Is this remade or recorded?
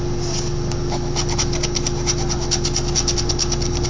recorded